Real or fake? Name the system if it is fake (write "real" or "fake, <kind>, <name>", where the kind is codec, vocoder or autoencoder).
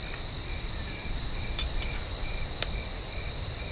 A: real